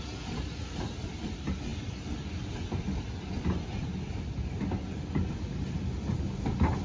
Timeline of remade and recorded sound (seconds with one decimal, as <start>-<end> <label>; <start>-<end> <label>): 0.0-6.8 recorded